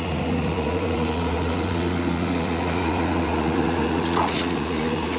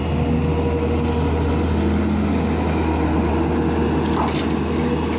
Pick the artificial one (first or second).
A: first